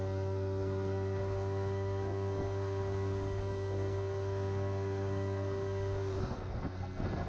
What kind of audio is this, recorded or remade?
remade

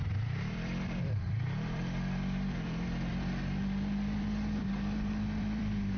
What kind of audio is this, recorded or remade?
remade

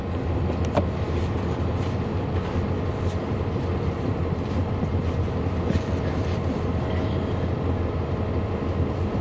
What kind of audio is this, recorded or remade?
recorded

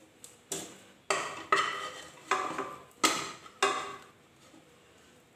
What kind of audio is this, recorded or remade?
recorded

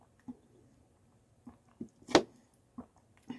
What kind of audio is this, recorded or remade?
recorded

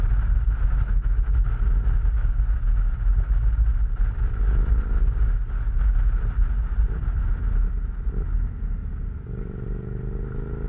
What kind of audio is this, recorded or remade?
recorded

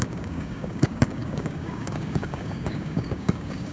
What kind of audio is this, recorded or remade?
remade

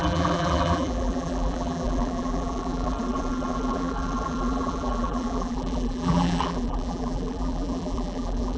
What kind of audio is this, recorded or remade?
remade